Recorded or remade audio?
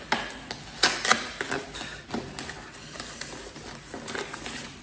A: recorded